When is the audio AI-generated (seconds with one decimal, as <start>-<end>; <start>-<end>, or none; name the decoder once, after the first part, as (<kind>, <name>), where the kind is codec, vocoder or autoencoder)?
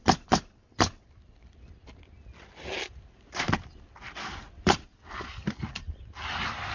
none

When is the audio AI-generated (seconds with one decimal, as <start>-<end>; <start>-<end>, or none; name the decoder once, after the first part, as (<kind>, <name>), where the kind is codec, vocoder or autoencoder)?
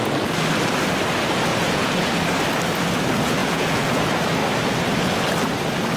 1.5-2.1 (vocoder, Vocos); 3.4-4.0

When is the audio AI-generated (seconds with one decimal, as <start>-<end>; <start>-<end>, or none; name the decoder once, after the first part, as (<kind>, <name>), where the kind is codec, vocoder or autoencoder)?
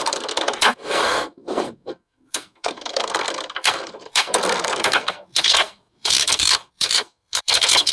0.0-7.9 (codec, SNAC)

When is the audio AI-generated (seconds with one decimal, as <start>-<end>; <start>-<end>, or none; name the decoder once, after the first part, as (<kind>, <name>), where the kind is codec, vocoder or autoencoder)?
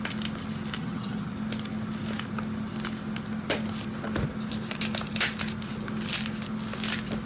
0.8-1.3 (vocoder, HiFi-GAN)